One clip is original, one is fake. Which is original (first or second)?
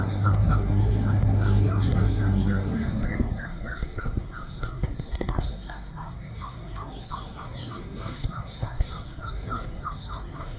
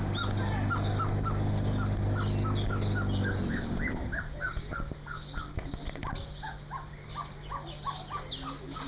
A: second